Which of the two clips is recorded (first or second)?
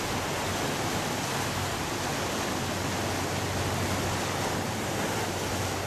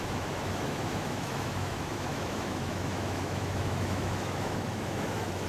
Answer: first